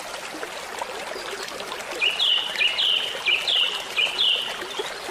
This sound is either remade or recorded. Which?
recorded